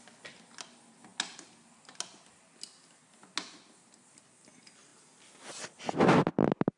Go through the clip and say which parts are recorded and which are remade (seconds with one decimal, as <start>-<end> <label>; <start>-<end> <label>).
0.0-6.8 recorded